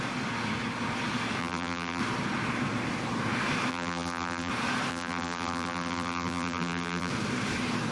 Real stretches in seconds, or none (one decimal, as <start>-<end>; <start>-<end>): 0.0-1.4; 2.0-3.7; 4.5-4.9; 7.1-7.9